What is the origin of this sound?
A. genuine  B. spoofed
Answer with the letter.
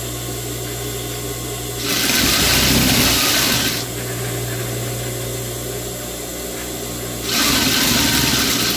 A